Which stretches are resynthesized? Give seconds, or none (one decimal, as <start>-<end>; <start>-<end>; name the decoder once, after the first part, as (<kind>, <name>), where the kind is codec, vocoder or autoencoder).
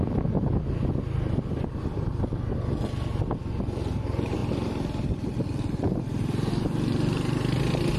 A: none